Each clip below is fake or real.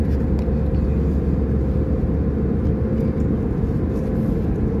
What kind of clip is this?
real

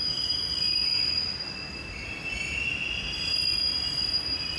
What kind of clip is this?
real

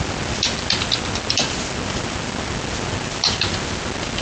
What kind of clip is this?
real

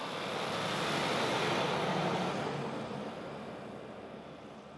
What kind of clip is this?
real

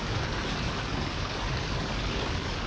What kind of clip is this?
fake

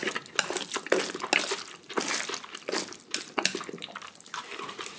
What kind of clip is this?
real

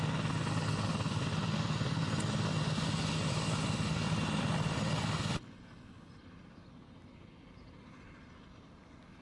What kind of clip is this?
real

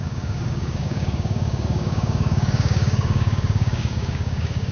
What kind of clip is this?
fake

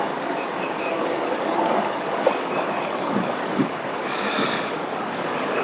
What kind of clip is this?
fake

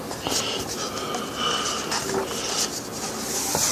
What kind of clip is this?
real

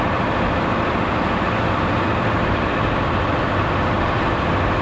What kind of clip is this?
real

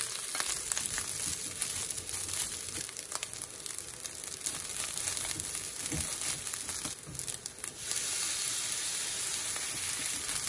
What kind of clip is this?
real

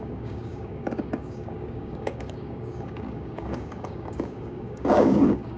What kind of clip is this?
fake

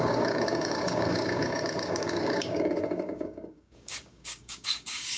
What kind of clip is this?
fake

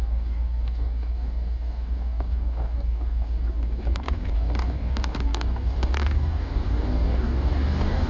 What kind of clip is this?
fake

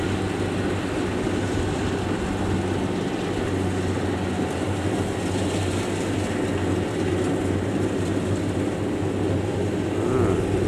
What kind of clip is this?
real